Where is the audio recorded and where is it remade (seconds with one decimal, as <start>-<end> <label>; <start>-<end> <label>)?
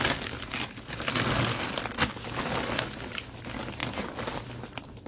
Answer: 0.0-5.1 recorded